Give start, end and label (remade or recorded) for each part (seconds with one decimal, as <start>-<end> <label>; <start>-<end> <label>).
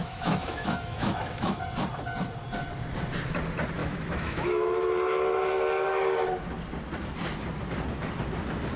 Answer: 0.0-1.6 remade; 1.6-3.8 recorded; 3.8-4.9 remade; 4.9-8.8 recorded